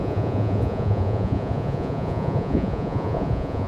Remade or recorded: remade